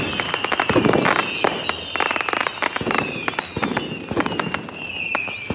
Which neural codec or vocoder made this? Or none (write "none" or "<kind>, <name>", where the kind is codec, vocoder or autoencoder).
none